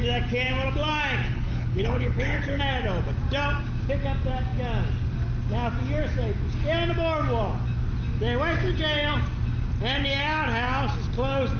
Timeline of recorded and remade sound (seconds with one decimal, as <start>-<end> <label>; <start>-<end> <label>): 0.0-1.2 recorded; 1.2-2.6 remade; 2.6-11.6 recorded